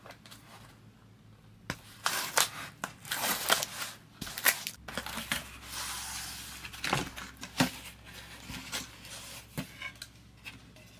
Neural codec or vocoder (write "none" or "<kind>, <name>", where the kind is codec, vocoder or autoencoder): none